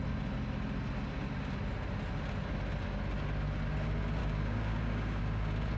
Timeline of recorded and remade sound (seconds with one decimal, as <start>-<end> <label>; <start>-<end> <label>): 0.0-4.2 recorded; 4.2-5.2 remade; 5.2-5.8 recorded